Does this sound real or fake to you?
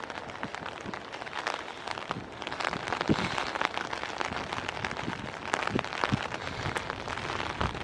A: real